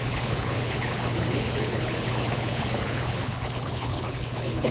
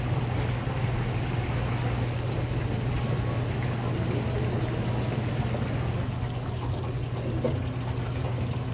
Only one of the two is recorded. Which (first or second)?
second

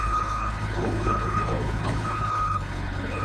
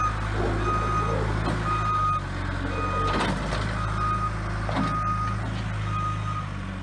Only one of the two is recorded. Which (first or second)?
second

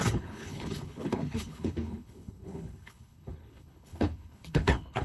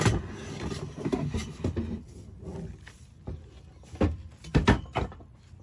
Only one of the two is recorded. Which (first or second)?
second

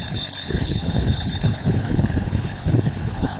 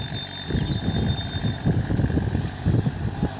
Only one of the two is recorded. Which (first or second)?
second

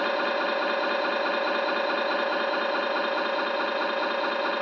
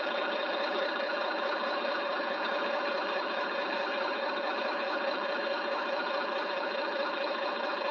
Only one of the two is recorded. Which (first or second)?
first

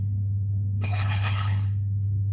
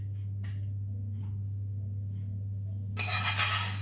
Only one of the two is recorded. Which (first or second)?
second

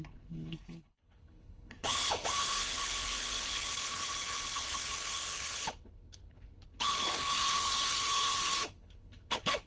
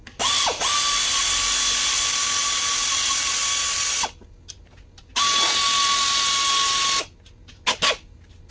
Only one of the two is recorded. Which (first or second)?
second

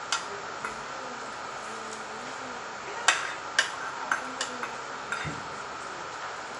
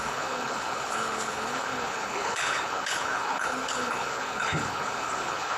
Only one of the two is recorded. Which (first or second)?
first